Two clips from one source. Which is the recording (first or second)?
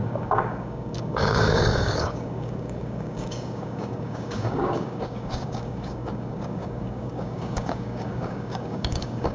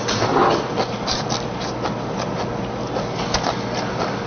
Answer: second